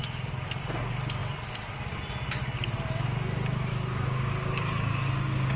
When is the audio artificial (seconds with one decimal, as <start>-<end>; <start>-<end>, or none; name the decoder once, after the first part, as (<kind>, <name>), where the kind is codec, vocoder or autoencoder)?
3.7-5.6 (codec, DAC)